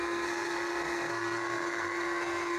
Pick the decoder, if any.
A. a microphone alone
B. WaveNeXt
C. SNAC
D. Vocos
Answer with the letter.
C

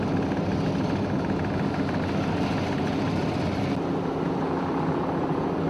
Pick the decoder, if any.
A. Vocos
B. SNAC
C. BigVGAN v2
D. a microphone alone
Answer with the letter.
D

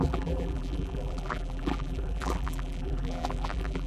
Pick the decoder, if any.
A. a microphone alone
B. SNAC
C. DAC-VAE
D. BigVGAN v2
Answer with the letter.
D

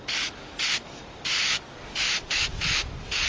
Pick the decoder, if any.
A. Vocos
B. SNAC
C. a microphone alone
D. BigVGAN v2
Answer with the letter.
C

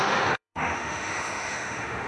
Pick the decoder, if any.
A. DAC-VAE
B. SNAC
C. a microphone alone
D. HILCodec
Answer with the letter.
A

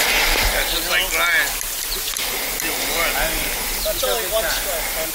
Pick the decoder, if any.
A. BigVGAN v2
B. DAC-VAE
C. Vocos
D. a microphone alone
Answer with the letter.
D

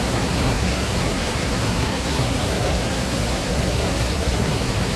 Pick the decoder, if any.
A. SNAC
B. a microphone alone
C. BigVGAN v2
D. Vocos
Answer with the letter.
A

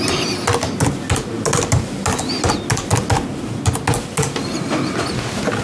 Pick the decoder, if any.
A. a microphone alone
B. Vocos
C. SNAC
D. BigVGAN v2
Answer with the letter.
A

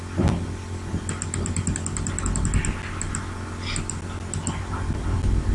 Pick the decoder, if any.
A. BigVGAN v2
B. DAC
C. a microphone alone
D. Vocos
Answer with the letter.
C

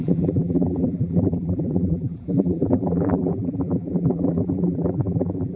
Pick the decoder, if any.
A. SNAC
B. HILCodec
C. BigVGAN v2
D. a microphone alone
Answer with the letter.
C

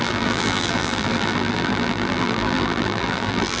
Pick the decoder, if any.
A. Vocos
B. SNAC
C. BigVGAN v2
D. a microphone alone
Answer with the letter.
C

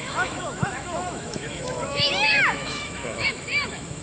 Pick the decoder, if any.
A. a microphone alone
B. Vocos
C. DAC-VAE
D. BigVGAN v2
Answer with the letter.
C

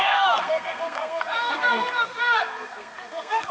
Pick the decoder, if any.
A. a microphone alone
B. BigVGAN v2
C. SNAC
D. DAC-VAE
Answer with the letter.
C